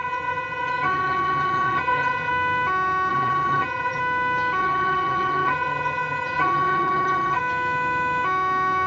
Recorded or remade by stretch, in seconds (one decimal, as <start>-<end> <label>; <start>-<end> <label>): 0.0-2.3 remade; 2.3-3.1 recorded; 3.1-4.0 remade; 4.0-4.6 recorded; 4.6-7.4 remade; 7.4-8.9 recorded